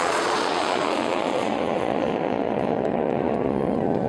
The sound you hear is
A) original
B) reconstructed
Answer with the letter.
B